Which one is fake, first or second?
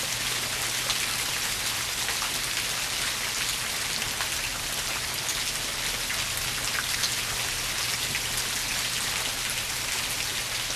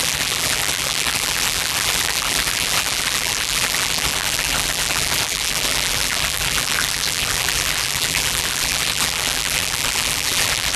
second